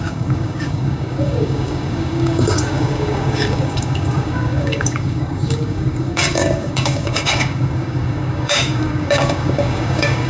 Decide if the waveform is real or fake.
fake